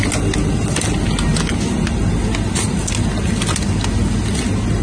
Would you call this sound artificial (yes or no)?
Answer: no